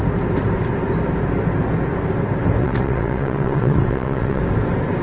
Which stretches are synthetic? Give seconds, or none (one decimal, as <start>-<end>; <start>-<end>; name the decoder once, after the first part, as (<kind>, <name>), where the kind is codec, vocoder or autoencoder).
2.6-4.4 (vocoder, WaveNeXt)

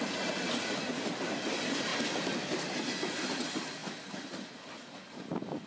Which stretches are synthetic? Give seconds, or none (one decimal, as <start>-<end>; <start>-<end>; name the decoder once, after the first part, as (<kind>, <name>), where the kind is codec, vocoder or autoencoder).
none

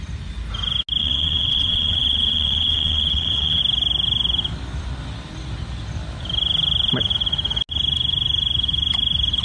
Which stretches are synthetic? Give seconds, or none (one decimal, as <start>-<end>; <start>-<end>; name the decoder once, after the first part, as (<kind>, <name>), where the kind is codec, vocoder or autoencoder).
1.0-3.6 (vocoder, WaveNeXt)

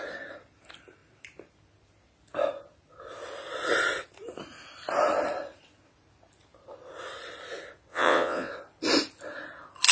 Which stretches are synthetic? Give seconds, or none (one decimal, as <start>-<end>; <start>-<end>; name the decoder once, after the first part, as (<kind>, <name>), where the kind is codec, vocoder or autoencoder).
7.9-8.5 (vocoder, WaveNeXt)

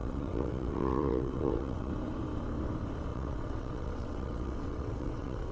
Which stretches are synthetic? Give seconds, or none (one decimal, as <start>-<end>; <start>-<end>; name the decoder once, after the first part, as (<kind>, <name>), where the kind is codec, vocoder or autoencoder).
0.0-1.9 (vocoder, WaveNeXt); 3.1-5.5

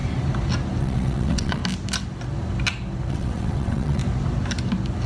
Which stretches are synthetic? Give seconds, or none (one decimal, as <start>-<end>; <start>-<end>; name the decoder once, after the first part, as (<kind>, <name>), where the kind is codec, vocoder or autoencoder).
0.8-1.6 (vocoder, WaveNeXt); 3.1-4.0

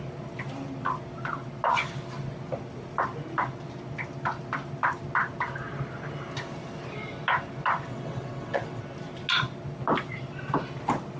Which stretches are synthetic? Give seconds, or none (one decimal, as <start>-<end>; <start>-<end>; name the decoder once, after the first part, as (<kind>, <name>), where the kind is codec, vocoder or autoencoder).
7.9-8.8 (vocoder, WaveNeXt)

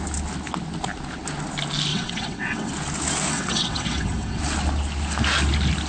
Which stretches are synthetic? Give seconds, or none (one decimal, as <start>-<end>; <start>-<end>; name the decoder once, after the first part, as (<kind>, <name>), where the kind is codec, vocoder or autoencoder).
1.9-2.7 (vocoder, WaveNeXt); 3.3-4.4